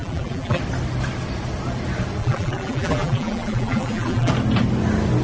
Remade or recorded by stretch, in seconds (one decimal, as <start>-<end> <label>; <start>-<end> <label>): 0.0-0.6 remade; 0.6-2.2 recorded; 2.2-4.3 remade; 4.3-5.2 recorded